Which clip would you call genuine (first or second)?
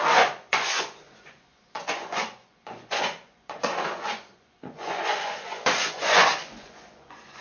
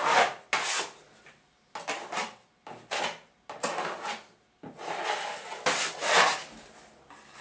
second